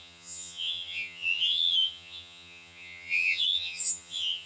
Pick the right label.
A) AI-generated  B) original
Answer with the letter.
A